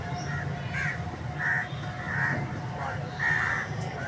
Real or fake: real